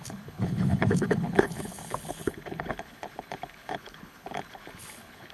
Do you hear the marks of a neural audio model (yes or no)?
yes